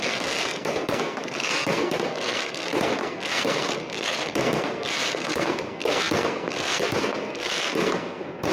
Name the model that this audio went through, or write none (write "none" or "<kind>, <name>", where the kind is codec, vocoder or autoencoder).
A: codec, SNAC